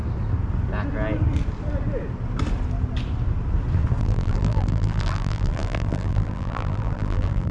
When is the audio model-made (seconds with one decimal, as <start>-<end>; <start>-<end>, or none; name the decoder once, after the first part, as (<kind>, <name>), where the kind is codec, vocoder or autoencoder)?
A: 4.0-7.5 (vocoder, BigVGAN v2)